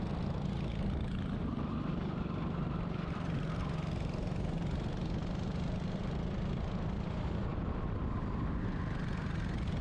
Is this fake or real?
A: real